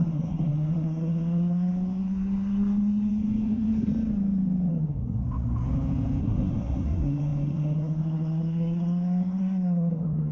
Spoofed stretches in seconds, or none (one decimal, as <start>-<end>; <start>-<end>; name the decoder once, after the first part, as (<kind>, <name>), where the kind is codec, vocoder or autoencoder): 0.0-3.9 (codec, SNAC); 4.7-5.2; 6.2-10.3